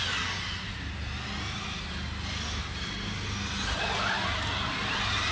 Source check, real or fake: real